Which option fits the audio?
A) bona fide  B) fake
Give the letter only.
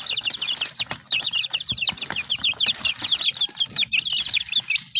A